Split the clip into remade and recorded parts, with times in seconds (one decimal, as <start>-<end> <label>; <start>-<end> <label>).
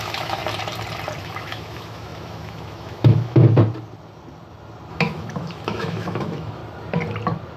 0.0-0.4 remade; 0.4-1.2 recorded; 1.2-3.4 remade; 3.4-4.9 recorded; 4.9-6.6 remade; 6.6-7.6 recorded